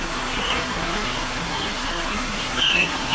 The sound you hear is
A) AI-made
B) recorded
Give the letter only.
A